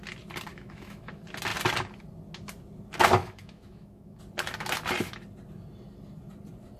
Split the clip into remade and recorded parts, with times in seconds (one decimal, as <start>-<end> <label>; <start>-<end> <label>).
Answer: 0.0-0.5 recorded; 0.5-1.1 remade; 1.1-3.2 recorded; 3.2-4.2 remade; 4.2-6.8 recorded